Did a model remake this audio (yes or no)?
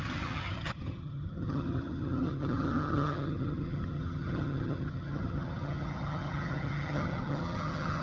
yes